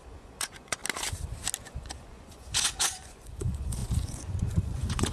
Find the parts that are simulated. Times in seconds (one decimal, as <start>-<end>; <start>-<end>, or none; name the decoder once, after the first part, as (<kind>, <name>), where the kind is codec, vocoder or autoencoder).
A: 0.0-0.8 (vocoder, Vocos); 1.6-5.1